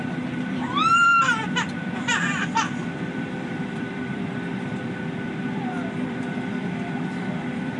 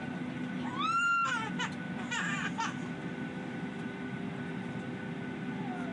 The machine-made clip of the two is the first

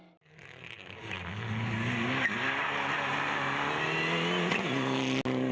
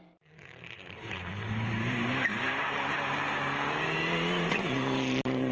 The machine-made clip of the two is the second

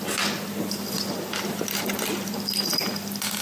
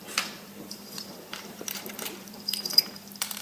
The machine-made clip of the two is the second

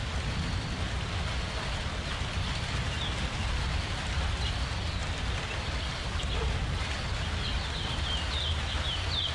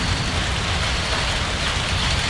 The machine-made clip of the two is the first